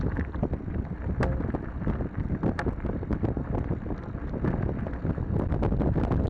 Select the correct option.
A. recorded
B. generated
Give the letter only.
A